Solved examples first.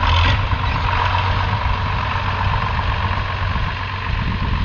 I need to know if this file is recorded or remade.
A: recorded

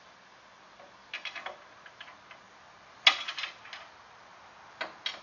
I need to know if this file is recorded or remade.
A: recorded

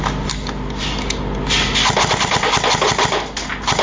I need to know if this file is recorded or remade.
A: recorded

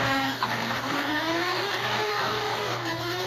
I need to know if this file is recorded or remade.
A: remade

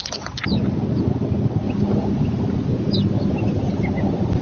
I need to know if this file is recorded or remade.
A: recorded